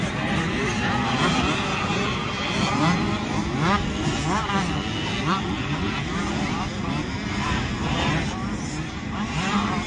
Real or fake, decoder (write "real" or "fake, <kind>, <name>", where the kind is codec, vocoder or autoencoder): real